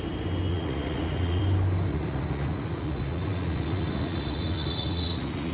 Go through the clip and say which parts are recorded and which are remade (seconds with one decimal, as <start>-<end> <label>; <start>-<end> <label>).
0.0-0.5 recorded; 0.5-1.4 remade; 1.4-1.9 recorded; 1.9-5.5 remade